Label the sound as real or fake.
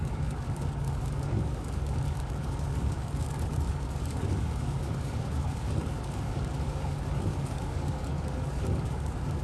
fake